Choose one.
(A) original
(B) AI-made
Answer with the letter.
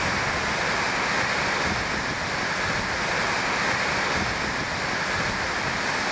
A